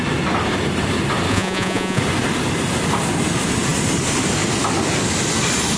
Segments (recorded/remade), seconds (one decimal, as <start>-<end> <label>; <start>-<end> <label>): 0.0-1.3 recorded; 1.3-2.0 remade; 2.0-5.8 recorded